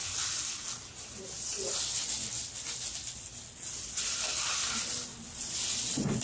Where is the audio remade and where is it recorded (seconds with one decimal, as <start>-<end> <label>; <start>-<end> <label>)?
0.0-6.2 recorded